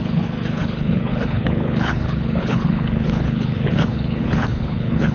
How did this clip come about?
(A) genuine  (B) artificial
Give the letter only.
B